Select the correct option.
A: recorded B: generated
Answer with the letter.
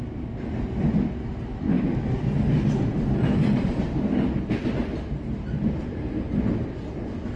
A